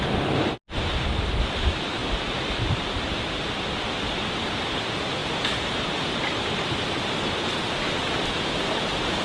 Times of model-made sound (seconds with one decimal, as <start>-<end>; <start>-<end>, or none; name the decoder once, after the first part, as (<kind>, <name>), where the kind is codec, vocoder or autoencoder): none